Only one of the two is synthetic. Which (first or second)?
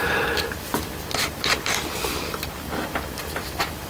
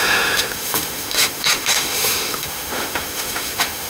second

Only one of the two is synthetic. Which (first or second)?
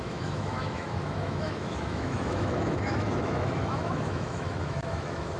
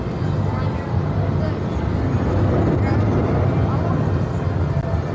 first